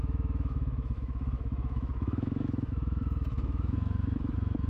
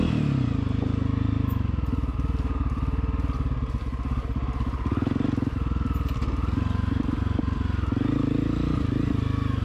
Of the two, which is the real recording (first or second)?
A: second